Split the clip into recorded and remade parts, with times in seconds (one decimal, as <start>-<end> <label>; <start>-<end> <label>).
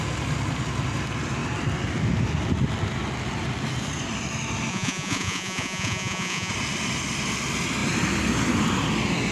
0.0-4.7 recorded; 4.7-6.5 remade; 6.5-9.3 recorded